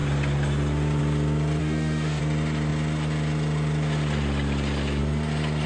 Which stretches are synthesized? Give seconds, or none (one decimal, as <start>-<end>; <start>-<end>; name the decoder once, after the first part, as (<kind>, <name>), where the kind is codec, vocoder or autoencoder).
1.6-2.2 (autoencoder, DAC-VAE)

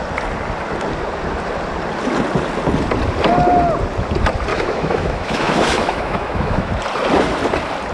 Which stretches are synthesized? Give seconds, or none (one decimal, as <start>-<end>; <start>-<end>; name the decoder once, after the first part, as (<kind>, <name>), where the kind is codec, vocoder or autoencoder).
4.5-6.7 (autoencoder, DAC-VAE)

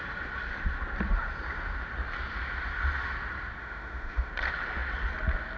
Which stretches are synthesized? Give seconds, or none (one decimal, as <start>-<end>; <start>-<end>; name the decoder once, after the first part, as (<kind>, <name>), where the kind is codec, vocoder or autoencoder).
3.6-4.3 (autoencoder, DAC-VAE)

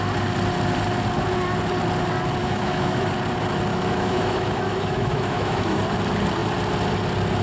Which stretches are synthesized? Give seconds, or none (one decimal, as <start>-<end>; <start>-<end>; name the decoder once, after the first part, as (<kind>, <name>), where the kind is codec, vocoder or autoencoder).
2.4-3.1 (autoencoder, DAC-VAE); 3.7-5.8

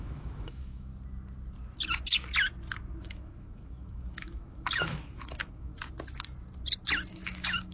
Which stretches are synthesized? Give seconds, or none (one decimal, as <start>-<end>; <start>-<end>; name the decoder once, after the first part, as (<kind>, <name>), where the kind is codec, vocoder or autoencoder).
0.0-0.9 (autoencoder, DAC-VAE); 3.0-5.7; 7.1-7.7

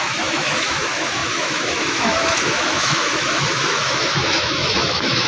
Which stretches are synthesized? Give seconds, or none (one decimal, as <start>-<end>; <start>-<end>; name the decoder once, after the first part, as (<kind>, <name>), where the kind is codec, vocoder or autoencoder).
0.0-5.3 (autoencoder, DAC-VAE)